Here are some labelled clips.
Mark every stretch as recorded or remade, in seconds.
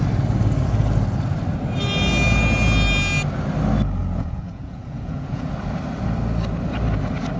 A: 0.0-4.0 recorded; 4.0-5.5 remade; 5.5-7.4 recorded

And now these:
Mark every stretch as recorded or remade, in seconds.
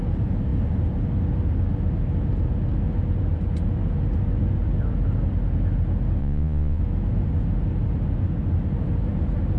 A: 0.0-6.2 recorded; 6.2-6.8 remade; 6.8-9.6 recorded